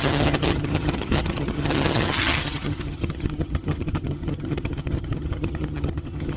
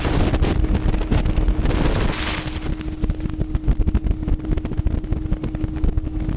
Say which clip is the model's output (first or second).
first